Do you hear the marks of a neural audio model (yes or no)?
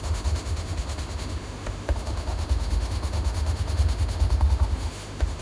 yes